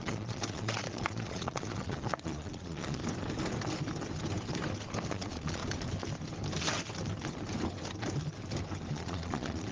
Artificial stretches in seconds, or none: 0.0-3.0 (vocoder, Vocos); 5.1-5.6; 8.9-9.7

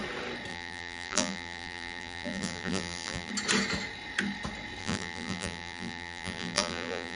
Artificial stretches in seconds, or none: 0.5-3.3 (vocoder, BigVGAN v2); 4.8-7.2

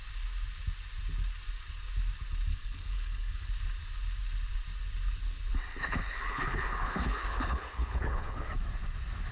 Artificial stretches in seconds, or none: 2.5-3.5 (codec, HILCodec); 5.7-8.5

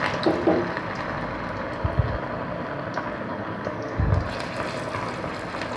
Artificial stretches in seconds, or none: 3.3-4.2 (codec, DAC)